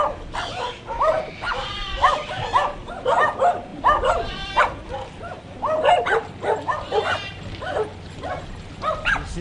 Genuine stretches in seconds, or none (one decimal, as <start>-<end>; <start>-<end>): 0.0-9.4